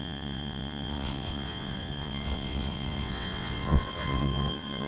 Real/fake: fake